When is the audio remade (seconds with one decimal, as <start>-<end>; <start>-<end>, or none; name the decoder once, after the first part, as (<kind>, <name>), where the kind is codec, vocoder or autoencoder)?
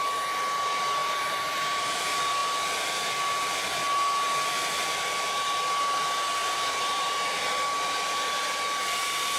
1.0-2.0 (vocoder, BigVGAN v2); 6.4-7.4